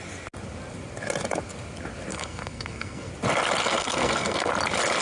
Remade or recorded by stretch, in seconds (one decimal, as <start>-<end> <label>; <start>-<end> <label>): 0.0-2.1 recorded; 2.1-3.1 remade; 3.1-3.6 recorded; 3.6-4.5 remade; 4.5-5.0 recorded